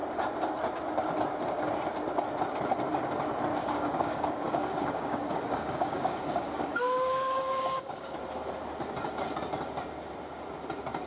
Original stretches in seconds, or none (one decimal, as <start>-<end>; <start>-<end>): 0.0-3.5; 8.2-11.1